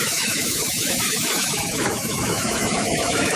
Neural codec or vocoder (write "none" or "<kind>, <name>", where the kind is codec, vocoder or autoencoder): autoencoder, DAC-VAE